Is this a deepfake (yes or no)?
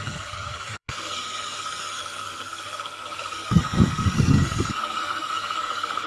yes